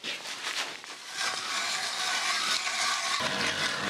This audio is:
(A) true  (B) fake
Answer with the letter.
B